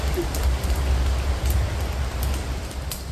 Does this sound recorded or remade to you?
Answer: recorded